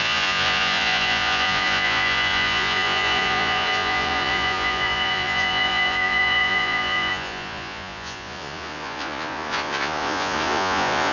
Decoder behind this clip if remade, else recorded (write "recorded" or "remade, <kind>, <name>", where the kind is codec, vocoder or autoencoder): remade, vocoder, Vocos